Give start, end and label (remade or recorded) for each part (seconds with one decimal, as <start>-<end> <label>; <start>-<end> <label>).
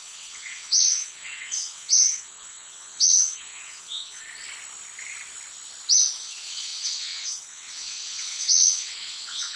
0.0-4.2 remade; 4.2-6.2 recorded; 6.2-9.6 remade